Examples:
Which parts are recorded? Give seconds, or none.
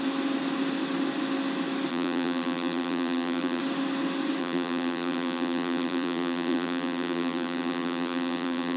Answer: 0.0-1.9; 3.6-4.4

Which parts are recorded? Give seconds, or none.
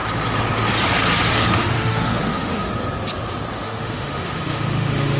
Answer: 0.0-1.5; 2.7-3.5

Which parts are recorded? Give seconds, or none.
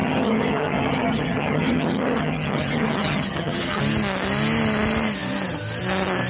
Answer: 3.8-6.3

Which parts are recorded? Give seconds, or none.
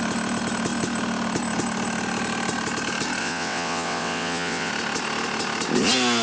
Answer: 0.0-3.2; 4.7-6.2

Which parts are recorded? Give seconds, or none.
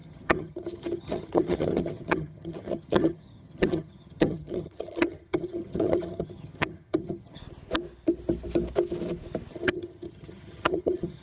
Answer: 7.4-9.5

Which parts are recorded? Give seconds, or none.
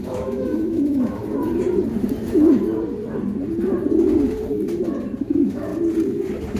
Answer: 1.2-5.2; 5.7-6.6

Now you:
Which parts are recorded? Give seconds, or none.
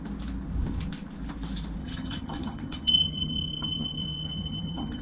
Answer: 0.0-1.8